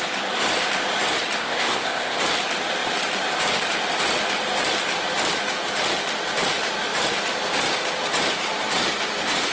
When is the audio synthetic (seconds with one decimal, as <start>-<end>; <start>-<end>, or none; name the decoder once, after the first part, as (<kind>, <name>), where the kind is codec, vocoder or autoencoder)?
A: 1.4-2.2 (codec, ZipCodec)